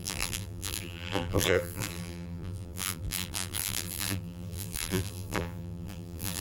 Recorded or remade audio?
remade